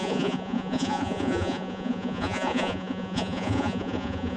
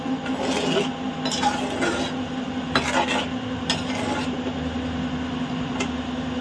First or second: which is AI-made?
first